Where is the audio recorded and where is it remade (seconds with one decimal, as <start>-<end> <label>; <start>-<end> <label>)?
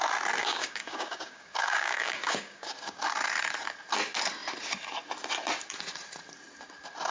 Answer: 0.0-0.4 recorded; 0.4-3.0 remade; 3.0-7.1 recorded